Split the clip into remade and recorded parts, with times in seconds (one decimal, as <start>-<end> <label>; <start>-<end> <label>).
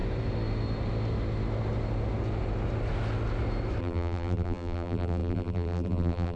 0.0-3.8 recorded; 3.8-6.4 remade